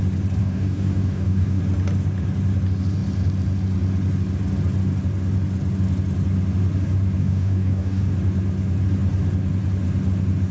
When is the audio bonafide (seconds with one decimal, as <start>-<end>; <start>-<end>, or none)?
0.0-0.4; 1.6-7.2; 8.0-10.5